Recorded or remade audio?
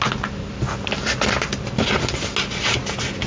recorded